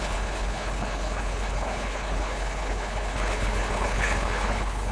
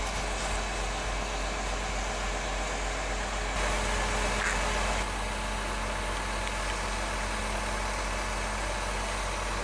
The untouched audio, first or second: second